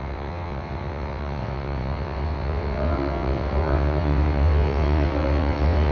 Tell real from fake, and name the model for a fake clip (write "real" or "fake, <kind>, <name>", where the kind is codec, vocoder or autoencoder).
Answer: fake, vocoder, WaveNeXt